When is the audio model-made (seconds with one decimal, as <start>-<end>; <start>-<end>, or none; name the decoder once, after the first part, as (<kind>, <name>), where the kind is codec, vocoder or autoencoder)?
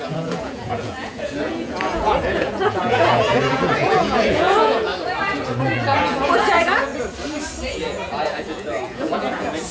0.0-4.9 (vocoder, Vocos); 5.6-6.9; 7.7-9.7